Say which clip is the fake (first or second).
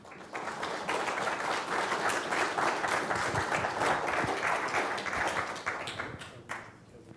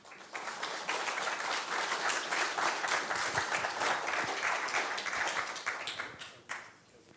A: second